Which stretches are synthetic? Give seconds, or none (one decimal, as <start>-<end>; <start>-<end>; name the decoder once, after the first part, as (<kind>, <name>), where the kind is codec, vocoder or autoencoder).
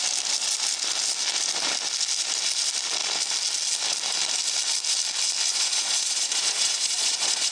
5.5-7.5 (vocoder, Vocos)